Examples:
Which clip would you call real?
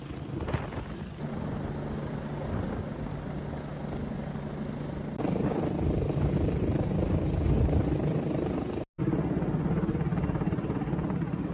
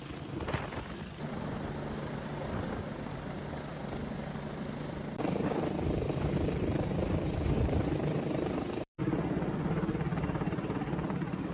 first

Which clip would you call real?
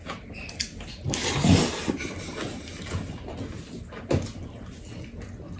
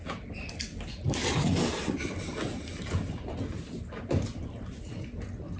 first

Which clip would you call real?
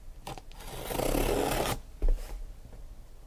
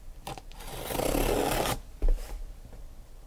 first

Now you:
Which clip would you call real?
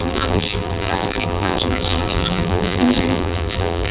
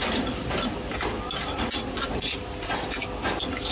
second